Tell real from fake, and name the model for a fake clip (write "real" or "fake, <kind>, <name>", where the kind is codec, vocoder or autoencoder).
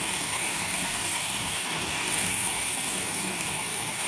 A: fake, codec, DAC